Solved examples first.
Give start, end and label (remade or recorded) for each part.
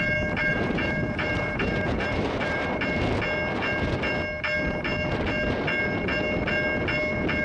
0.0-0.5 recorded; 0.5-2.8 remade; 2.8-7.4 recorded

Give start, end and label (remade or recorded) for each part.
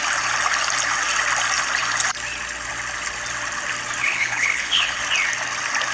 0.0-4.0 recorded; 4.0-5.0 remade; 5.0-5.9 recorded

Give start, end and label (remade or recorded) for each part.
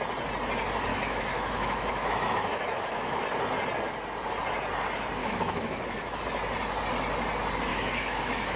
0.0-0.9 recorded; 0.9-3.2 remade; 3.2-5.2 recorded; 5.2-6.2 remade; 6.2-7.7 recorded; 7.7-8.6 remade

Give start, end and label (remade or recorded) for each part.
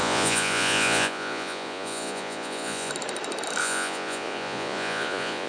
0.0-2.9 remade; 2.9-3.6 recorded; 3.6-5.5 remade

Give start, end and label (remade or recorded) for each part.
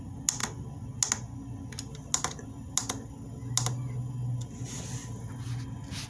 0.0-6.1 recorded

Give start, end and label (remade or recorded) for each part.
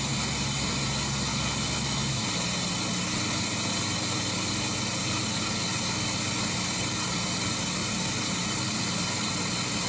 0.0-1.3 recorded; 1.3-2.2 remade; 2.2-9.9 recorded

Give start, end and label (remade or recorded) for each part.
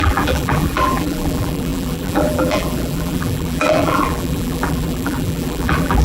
0.0-6.0 remade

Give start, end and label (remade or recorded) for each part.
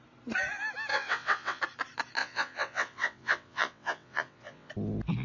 0.0-0.9 recorded; 0.9-1.6 remade; 1.6-2.2 recorded; 2.2-4.7 remade; 4.7-5.2 recorded